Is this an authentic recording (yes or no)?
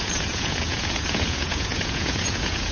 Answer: no